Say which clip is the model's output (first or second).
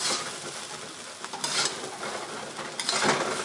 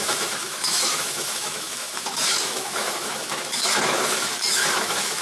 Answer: second